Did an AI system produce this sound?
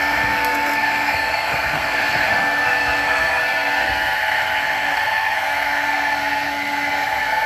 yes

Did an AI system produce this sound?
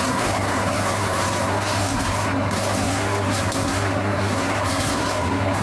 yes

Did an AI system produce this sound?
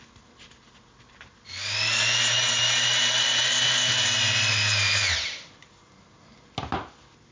no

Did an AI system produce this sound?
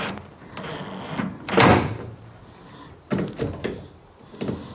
no